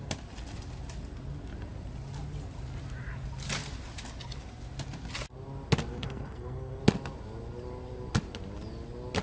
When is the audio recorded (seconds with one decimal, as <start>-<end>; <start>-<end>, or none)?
0.0-5.9; 6.8-9.2